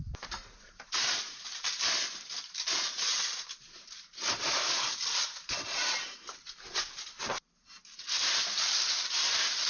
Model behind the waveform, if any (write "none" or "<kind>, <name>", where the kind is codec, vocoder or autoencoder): vocoder, BigVGAN v2